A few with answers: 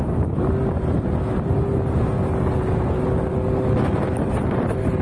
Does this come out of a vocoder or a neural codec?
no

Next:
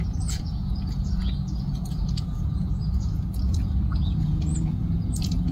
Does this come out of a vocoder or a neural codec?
yes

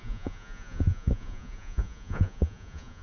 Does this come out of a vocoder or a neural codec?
yes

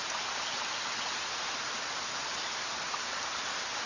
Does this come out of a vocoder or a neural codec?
no